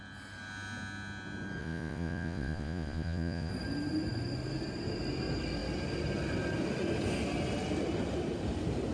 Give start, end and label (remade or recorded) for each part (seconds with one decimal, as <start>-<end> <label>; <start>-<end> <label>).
0.0-1.6 recorded; 1.6-3.5 remade; 3.5-8.9 recorded